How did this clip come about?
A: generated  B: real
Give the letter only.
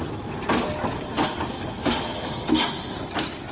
B